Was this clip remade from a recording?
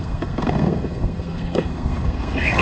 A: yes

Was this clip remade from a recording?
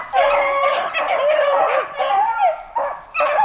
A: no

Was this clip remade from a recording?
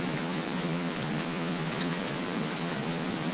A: yes